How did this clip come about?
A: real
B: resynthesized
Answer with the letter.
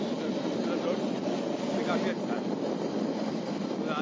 A